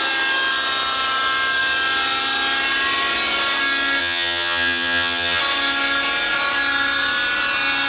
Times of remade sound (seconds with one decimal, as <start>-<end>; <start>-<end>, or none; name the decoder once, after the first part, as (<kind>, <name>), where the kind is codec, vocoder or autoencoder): 4.0-5.4 (vocoder, HiFi-GAN)